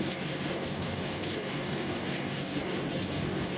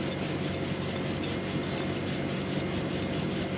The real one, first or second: second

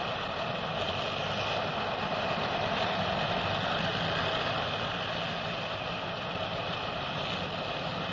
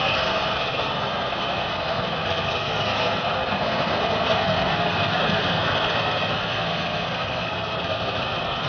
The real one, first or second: first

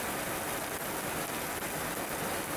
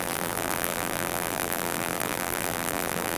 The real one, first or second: first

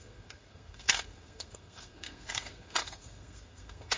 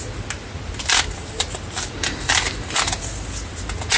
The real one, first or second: second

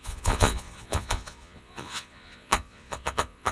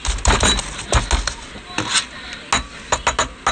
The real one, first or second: second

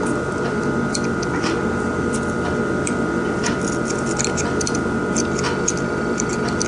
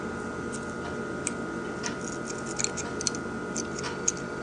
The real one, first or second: second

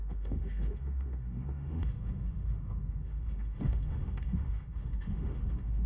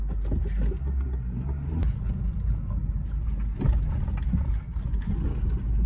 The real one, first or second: second